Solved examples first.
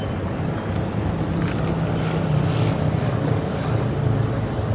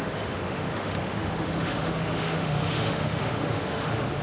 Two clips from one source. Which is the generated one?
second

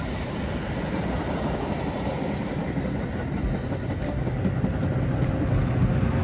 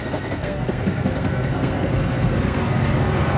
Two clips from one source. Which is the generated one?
second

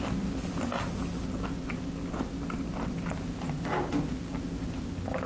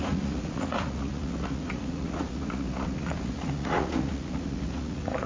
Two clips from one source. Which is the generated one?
second